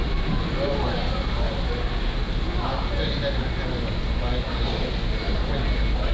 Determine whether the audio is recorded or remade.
recorded